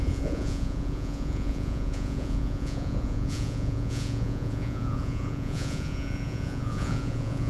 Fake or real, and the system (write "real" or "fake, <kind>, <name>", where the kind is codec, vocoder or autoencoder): fake, vocoder, Vocos